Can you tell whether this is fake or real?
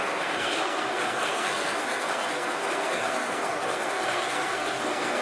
fake